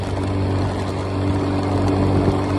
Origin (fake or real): real